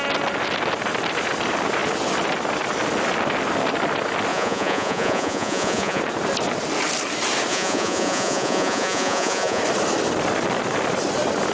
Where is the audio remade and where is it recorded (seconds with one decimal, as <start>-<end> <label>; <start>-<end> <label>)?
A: 0.0-4.3 recorded; 4.3-6.0 remade; 6.0-7.5 recorded; 7.5-9.6 remade; 9.6-11.5 recorded